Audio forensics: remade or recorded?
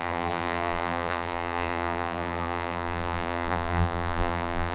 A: remade